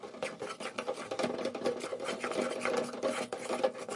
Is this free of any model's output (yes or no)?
yes